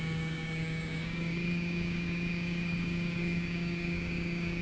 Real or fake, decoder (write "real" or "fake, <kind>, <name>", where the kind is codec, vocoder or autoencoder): fake, codec, DAC